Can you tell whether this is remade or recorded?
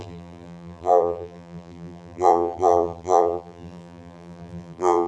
remade